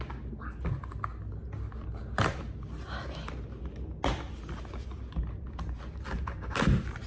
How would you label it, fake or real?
real